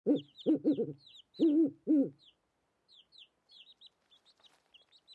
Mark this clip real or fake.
real